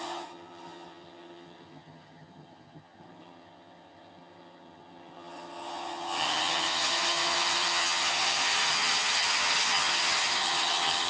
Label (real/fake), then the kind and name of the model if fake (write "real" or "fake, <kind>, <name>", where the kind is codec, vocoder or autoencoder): fake, vocoder, HiFi-GAN